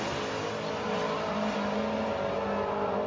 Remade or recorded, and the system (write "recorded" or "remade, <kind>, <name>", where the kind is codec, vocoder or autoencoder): recorded